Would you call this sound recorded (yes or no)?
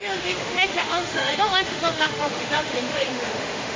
no